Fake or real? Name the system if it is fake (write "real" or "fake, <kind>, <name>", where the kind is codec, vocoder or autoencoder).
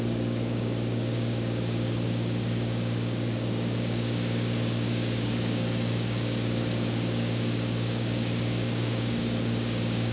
fake, codec, DAC